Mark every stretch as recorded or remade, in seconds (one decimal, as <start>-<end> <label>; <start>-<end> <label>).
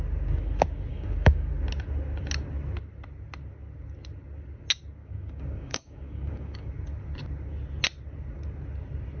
0.0-0.9 recorded; 0.9-1.5 remade; 1.5-5.0 recorded; 5.0-6.7 remade; 6.7-9.2 recorded